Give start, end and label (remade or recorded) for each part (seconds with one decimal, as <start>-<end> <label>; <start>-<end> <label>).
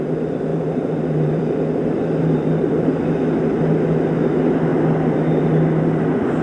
0.0-0.5 recorded; 0.5-3.0 remade; 3.0-6.4 recorded